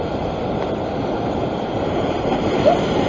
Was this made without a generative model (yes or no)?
no